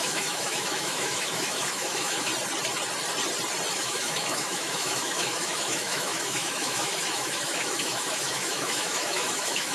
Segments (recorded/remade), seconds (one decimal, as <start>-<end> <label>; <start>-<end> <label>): 0.0-2.3 remade; 2.3-3.7 recorded; 3.7-9.7 remade